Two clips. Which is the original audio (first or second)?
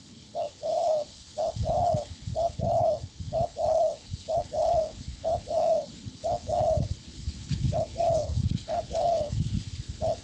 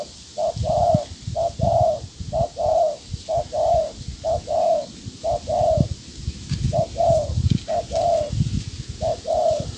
second